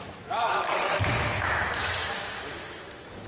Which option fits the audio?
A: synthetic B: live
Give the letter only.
A